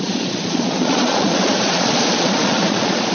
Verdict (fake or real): fake